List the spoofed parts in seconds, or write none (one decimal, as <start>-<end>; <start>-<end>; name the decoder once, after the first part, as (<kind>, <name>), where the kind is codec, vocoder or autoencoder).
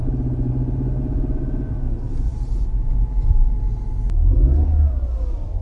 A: none